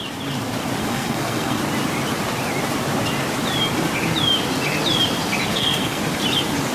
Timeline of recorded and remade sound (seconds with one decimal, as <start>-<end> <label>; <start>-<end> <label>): 0.0-0.8 recorded; 0.8-1.6 remade; 1.6-5.5 recorded; 5.5-6.0 remade; 6.0-6.7 recorded